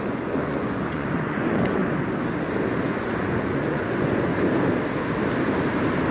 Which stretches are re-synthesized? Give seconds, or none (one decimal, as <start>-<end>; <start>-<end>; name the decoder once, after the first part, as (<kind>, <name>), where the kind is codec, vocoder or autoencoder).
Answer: 0.0-1.8 (vocoder, Vocos); 2.9-4.3